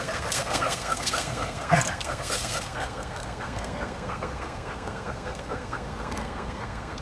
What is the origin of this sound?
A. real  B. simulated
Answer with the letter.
B